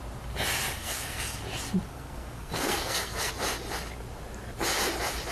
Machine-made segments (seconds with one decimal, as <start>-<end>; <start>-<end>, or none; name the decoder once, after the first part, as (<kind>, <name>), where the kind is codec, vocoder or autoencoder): 0.8-1.4 (codec, SNAC); 1.9-3.3